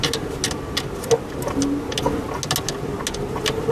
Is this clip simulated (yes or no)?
no